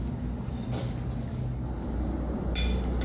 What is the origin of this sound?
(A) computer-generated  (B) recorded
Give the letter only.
B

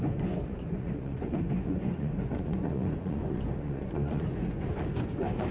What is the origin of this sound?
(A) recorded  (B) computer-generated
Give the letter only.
B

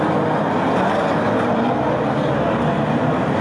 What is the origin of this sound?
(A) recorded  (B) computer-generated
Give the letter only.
A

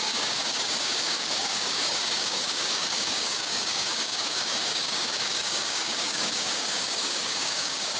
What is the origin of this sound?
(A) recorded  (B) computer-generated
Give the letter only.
B